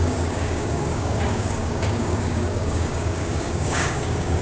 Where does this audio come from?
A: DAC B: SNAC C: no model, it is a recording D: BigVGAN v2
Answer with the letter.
A